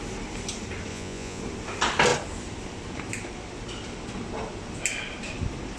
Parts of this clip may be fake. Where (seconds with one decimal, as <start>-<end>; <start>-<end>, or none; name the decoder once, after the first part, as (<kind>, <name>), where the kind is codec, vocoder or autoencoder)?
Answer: 0.9-1.4 (vocoder, Vocos)